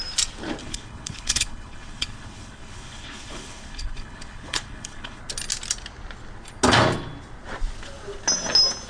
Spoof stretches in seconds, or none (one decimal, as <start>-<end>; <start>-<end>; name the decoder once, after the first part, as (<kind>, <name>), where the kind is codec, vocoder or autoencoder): 0.6-5.2 (codec, HILCodec)